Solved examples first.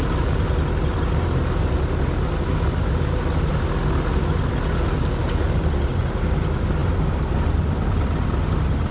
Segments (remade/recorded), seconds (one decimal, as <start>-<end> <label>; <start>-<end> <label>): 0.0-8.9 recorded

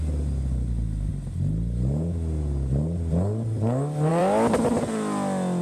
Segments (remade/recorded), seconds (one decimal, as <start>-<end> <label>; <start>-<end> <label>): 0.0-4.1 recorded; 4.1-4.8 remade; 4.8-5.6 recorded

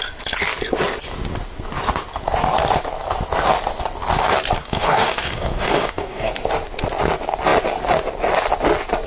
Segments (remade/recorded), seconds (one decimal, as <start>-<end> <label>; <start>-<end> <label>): 0.0-4.6 recorded; 4.6-6.3 remade; 6.3-9.1 recorded